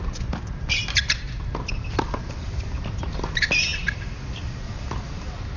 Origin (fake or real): real